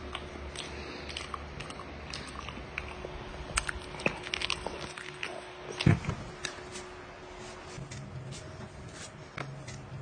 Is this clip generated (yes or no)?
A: no